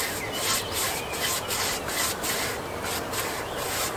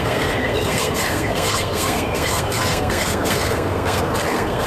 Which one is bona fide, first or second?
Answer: first